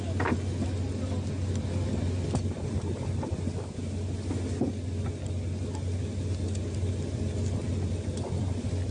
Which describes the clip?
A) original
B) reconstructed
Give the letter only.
A